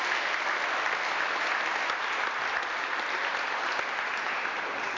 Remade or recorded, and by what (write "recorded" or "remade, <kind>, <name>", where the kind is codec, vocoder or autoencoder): recorded